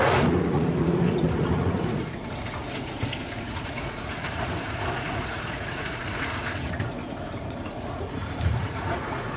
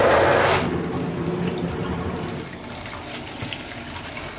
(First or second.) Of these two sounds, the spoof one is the first